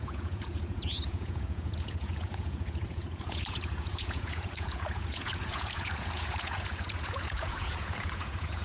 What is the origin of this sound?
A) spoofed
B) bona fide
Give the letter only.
A